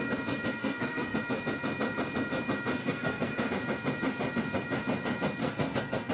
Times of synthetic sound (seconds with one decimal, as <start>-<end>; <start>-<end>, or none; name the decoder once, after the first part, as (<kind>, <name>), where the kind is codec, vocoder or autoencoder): 0.6-1.2 (codec, SNAC); 2.8-3.5; 5.4-6.1